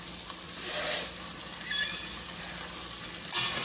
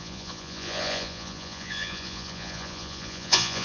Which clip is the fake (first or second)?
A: second